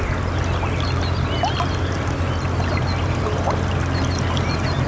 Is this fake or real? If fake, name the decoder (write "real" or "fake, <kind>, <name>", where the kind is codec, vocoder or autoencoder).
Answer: real